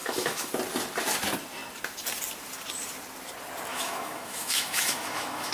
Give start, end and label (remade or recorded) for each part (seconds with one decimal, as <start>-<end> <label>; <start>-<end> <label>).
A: 0.0-0.5 remade; 0.5-3.7 recorded; 3.7-5.5 remade